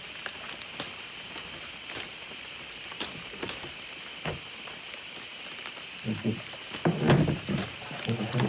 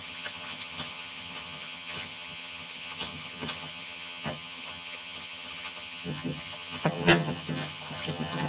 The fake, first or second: second